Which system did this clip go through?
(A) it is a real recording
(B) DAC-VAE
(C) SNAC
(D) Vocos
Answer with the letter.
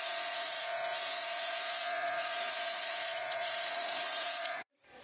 D